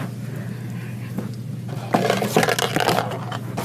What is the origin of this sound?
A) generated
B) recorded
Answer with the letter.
B